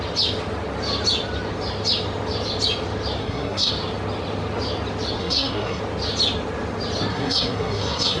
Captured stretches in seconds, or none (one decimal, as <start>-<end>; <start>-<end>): 0.0-3.2; 3.7-5.2; 5.8-7.1